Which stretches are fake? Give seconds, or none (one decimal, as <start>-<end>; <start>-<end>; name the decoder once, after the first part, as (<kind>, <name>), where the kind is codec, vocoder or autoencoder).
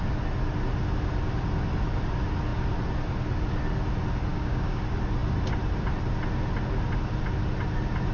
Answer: 4.3-4.8 (codec, DAC)